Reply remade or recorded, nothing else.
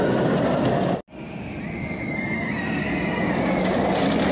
recorded